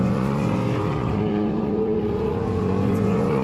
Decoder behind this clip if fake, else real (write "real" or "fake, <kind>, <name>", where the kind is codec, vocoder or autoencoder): fake, vocoder, Vocos